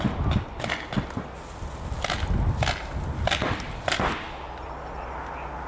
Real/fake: real